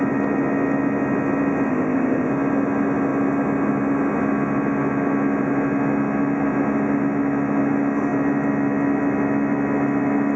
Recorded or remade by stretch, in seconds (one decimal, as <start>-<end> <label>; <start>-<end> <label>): 0.0-1.7 recorded; 1.7-2.3 remade; 2.3-10.4 recorded